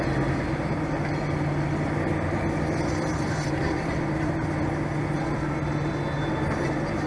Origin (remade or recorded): recorded